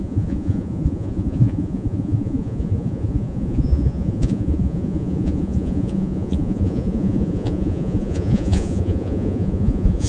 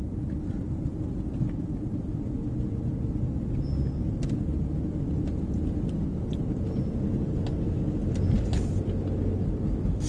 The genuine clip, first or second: second